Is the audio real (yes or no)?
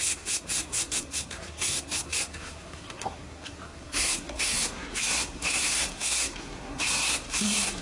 no